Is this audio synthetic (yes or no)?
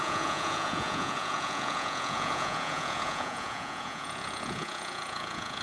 yes